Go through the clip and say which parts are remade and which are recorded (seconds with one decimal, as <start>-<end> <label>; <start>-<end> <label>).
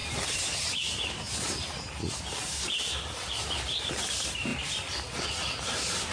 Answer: 0.0-4.5 remade; 4.5-5.2 recorded; 5.2-6.1 remade